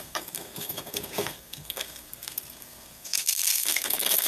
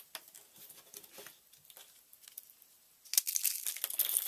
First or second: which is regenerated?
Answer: first